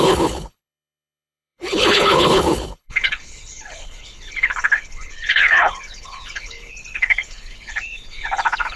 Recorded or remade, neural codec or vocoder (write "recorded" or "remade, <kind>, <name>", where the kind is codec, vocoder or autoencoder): remade, codec, HILCodec